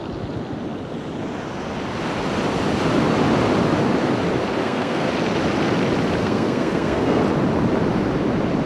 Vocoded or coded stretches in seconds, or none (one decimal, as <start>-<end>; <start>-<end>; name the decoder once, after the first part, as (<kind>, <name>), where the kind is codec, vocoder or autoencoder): 4.6-5.1 (codec, SNAC); 6.2-7.2